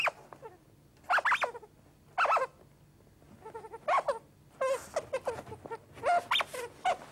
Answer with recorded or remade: recorded